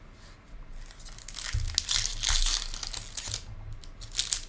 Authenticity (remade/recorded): recorded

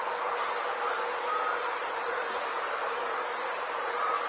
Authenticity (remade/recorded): recorded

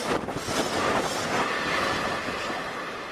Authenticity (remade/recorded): recorded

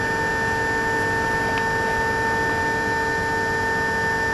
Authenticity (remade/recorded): recorded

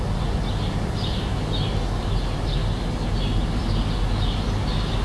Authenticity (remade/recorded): recorded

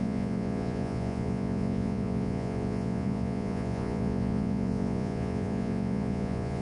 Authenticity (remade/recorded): remade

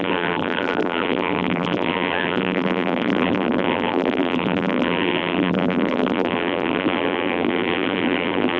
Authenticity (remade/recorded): remade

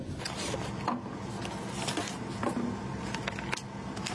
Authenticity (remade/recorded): recorded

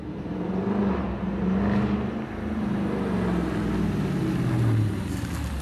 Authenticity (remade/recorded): recorded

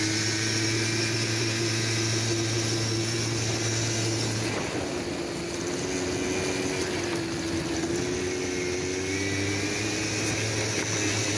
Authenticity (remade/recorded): recorded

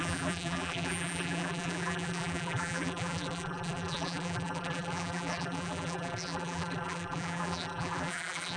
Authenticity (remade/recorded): remade